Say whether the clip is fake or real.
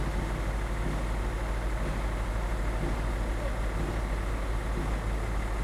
real